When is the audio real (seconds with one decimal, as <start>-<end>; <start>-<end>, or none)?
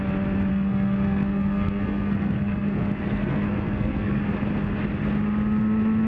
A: 0.0-0.5; 4.2-6.1